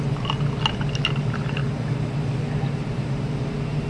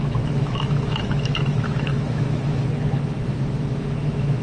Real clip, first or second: first